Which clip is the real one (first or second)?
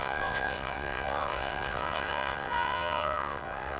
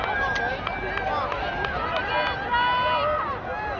second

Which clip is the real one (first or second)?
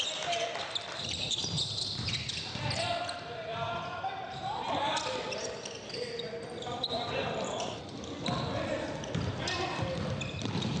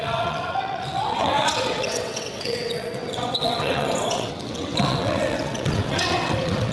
first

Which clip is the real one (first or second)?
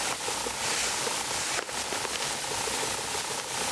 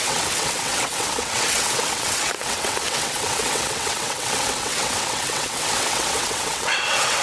first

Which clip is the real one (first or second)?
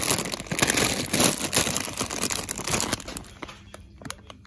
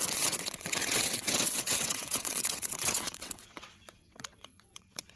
first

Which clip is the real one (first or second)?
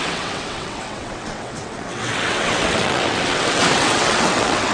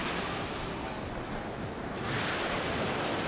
second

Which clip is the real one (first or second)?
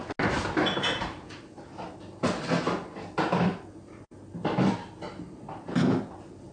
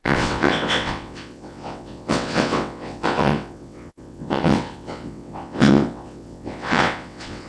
first